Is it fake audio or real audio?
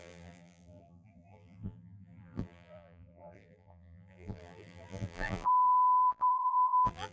fake